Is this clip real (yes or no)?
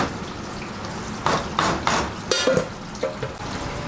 yes